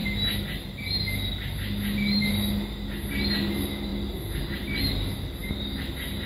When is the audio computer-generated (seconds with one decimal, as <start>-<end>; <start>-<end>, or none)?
none